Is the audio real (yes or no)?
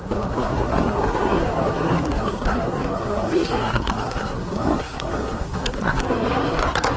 no